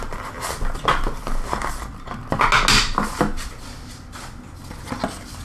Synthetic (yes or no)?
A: no